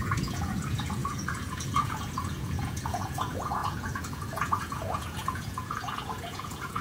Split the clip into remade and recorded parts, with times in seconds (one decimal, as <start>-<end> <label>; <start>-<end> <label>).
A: 0.0-6.8 remade